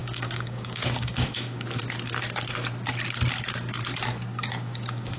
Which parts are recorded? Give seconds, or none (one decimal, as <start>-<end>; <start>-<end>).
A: 1.8-4.3